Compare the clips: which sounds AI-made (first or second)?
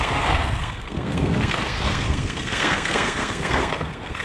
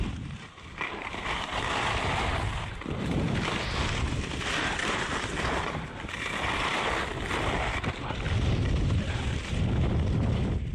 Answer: first